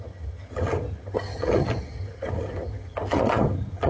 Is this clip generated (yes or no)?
yes